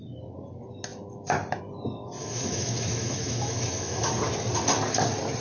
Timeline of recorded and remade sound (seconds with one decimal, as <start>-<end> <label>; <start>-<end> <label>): 0.0-2.2 recorded; 2.2-4.0 remade; 4.0-5.4 recorded